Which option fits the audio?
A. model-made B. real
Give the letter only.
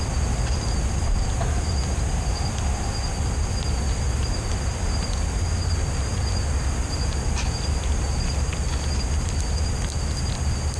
B